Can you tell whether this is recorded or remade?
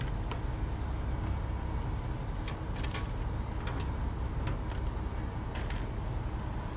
recorded